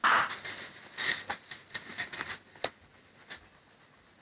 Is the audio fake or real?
real